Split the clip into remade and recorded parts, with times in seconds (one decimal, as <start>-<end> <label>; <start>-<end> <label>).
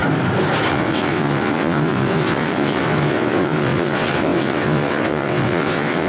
0.0-0.7 recorded; 0.7-6.1 remade